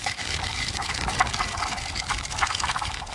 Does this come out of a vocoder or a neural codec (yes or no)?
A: yes